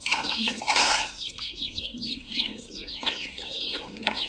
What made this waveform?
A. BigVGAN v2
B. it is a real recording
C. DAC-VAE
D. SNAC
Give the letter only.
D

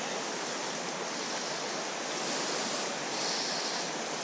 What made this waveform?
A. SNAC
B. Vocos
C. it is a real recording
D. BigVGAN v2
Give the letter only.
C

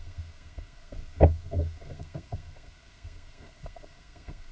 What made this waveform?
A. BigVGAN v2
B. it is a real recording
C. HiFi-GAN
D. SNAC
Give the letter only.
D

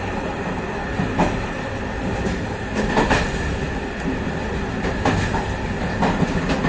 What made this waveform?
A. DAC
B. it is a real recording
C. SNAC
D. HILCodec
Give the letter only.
B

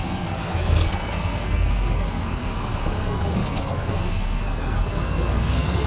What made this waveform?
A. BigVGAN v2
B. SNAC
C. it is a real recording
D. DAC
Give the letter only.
B